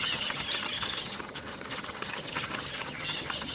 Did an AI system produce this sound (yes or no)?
yes